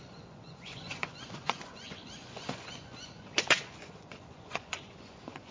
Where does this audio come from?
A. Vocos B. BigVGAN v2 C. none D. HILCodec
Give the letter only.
A